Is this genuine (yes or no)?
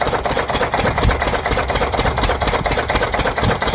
yes